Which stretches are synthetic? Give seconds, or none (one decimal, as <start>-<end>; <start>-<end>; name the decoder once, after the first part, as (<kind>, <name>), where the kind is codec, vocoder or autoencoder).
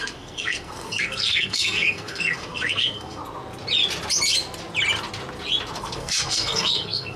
0.0-3.2 (codec, SNAC); 5.8-7.2